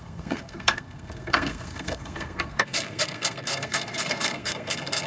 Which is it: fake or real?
fake